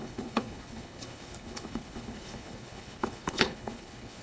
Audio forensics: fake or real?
fake